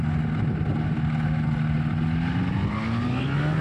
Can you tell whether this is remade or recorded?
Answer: recorded